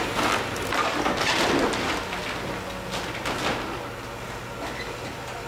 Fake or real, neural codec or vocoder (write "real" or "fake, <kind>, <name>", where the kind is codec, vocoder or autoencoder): real